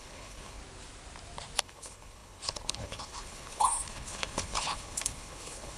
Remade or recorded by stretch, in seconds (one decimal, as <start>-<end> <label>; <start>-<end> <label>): 0.0-0.6 remade; 0.6-1.6 recorded; 1.6-5.8 remade